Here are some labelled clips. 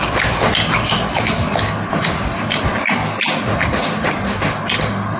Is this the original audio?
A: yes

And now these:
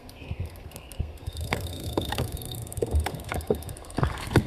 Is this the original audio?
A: no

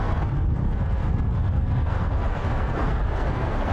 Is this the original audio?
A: no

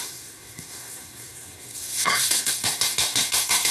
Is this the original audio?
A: no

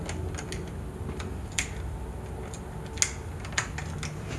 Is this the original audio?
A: yes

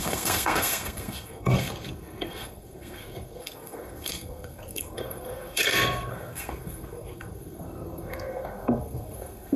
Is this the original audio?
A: no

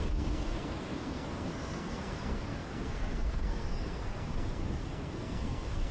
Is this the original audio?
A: no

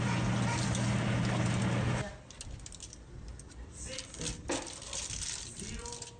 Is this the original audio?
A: yes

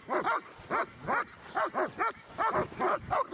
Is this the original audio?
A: yes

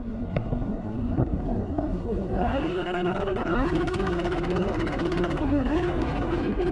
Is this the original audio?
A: no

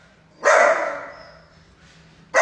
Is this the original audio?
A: yes